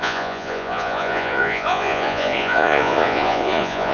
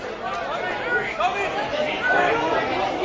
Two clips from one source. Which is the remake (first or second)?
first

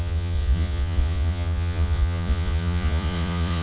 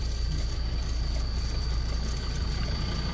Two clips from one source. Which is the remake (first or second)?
first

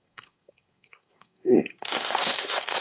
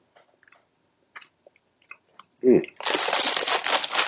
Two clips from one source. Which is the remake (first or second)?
first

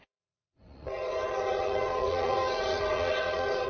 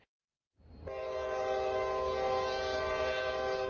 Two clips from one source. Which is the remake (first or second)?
first